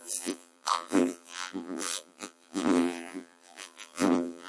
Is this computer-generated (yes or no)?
yes